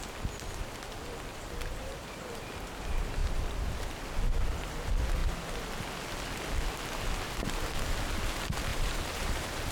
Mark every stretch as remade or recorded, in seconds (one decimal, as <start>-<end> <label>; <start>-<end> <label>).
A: 0.0-1.3 recorded; 1.3-2.3 remade; 2.3-3.2 recorded; 3.2-3.8 remade; 3.8-8.7 recorded; 8.7-9.7 remade